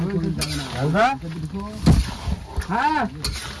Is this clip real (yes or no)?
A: yes